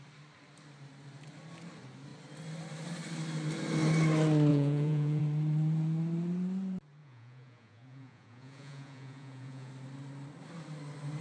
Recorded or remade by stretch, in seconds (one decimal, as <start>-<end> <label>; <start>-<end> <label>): 0.0-4.5 recorded; 4.5-5.2 remade; 5.2-7.0 recorded; 7.0-9.7 remade; 9.7-11.2 recorded